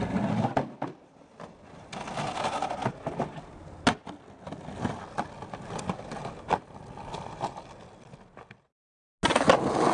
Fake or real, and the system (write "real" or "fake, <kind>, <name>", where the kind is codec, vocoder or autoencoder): real